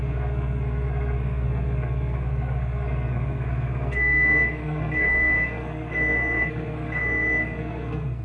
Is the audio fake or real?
fake